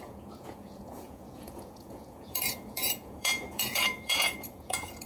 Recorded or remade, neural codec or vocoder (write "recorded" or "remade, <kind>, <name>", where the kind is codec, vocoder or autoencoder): remade, vocoder, Vocos